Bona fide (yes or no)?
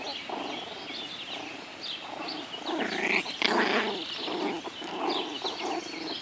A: yes